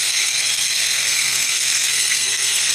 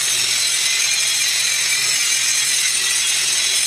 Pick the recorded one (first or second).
second